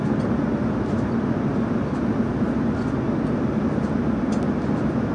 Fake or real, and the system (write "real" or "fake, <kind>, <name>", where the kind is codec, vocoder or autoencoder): real